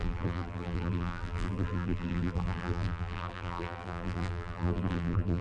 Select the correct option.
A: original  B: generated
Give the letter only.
B